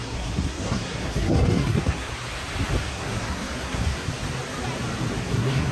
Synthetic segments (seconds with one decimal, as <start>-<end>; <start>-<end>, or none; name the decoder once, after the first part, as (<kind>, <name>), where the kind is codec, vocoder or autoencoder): 0.0-2.1 (codec, SNAC); 2.8-4.1; 5.2-5.7